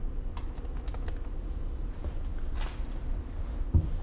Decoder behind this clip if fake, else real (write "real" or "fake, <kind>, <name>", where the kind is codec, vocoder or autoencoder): real